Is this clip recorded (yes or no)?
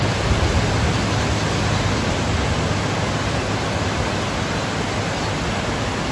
yes